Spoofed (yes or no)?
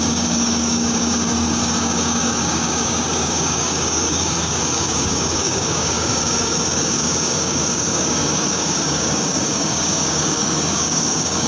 yes